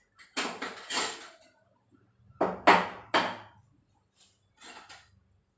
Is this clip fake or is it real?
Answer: real